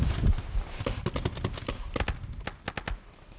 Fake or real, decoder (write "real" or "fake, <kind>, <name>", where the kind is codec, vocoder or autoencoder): real